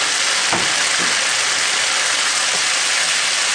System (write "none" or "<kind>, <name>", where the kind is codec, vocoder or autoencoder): none